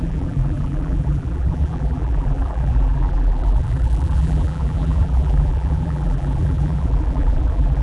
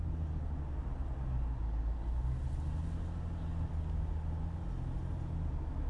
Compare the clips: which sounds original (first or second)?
second